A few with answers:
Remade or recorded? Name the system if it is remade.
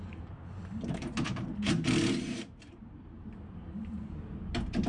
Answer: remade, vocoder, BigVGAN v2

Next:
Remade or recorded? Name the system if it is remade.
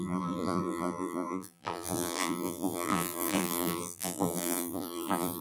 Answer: remade, vocoder, BigVGAN v2